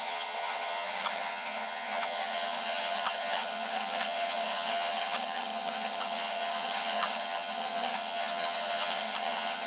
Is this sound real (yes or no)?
no